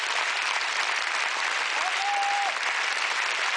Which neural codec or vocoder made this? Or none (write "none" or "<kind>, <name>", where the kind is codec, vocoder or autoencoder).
none